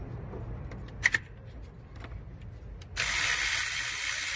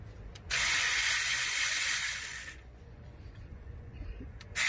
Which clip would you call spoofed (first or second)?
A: second